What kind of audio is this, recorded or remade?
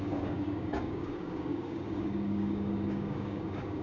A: remade